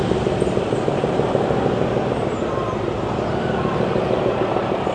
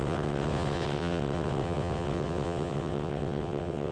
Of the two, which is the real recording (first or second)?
first